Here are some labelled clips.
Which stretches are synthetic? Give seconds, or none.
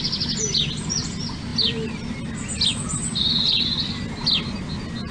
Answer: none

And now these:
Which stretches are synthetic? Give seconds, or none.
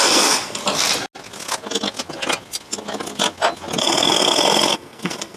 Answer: 0.0-0.6 (codec, SNAC); 3.8-5.4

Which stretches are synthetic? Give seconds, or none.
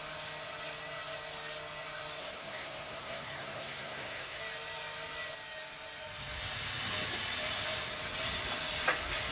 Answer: 2.2-4.4 (codec, SNAC)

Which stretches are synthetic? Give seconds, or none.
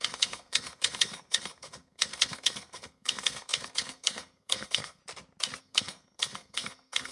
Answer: 0.0-5.0 (codec, SNAC); 5.6-7.1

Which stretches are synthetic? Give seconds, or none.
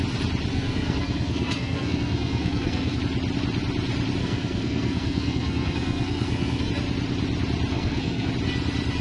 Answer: 0.5-3.0 (codec, SNAC); 4.2-6.7; 7.7-8.3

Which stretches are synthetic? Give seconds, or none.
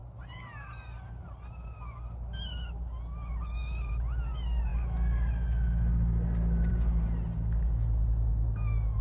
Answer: none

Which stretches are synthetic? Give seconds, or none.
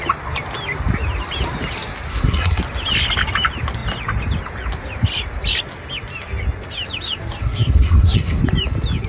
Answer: 2.1-2.6 (codec, SNAC); 7.4-8.4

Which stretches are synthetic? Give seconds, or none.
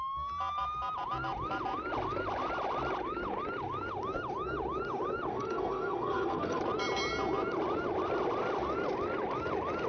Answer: 5.3-6.6 (codec, SNAC)